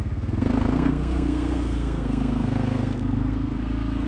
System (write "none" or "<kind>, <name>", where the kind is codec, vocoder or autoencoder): codec, SNAC